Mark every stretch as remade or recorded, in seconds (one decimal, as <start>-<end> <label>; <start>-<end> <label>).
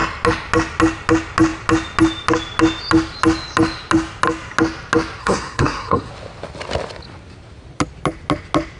0.0-5.2 recorded; 5.2-6.1 remade; 6.1-8.8 recorded